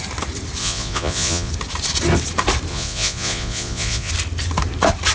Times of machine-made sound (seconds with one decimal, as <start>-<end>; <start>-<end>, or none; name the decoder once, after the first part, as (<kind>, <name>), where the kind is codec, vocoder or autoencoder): 0.6-1.5 (vocoder, Vocos); 2.7-4.1